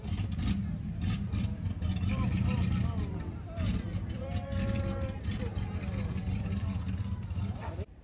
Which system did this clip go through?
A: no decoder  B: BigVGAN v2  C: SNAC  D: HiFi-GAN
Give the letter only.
B